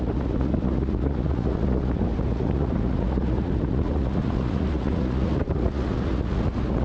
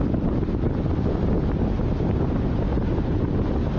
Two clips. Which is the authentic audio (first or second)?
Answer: second